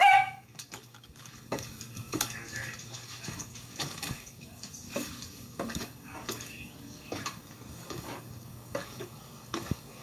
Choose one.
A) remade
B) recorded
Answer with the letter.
A